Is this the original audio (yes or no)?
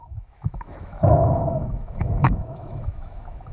no